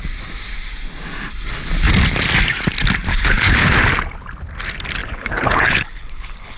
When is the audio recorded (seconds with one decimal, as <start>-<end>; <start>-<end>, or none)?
0.0-3.1; 3.7-5.0